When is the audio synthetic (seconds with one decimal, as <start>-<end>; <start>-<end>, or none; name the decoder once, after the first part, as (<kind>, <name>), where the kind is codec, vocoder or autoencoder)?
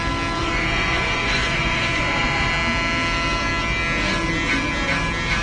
0.4-2.5 (vocoder, Vocos)